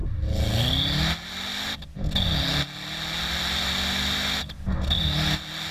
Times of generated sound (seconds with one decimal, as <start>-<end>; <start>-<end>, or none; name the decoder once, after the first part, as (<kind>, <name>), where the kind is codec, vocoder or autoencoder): none